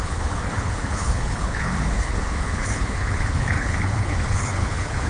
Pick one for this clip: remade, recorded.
remade